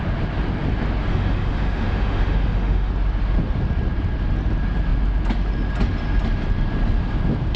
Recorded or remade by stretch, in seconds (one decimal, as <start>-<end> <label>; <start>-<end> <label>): 0.0-1.1 recorded; 1.1-2.9 remade; 2.9-7.6 recorded